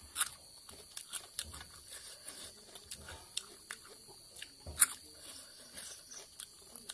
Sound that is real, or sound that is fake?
real